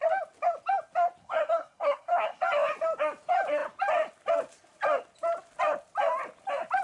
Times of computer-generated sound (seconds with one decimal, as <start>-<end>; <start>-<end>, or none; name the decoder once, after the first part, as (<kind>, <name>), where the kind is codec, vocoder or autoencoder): 1.2-2.4 (codec, SNAC)